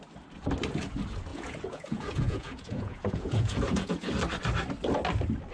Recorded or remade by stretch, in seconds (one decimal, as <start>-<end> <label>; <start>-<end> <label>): 0.0-1.3 recorded; 1.3-4.1 remade; 4.1-5.5 recorded